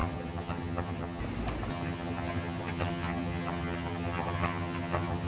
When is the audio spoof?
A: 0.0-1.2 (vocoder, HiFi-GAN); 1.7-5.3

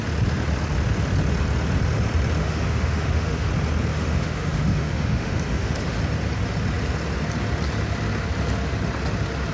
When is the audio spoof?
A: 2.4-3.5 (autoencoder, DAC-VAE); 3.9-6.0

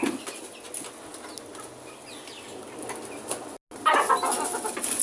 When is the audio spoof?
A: none

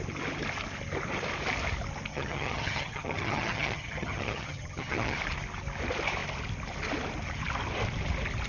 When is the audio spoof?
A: 2.1-5.2 (vocoder, HiFi-GAN)

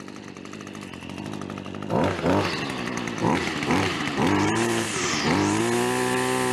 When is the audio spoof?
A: 3.2-5.6 (vocoder, BigVGAN v2)

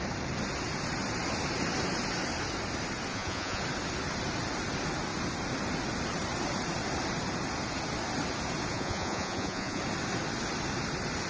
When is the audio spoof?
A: 3.1-3.6 (vocoder, Vocos); 8.7-9.8

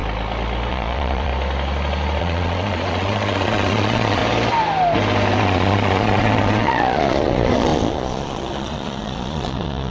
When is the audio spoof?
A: 0.7-1.3 (vocoder, Vocos); 2.2-4.2; 5.4-9.9